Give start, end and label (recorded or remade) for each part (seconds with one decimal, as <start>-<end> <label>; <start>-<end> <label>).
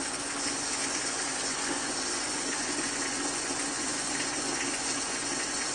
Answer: 0.0-5.7 remade